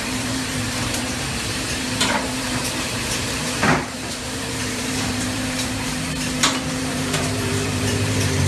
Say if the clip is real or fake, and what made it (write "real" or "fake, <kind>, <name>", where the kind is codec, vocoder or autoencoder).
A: fake, vocoder, BigVGAN v2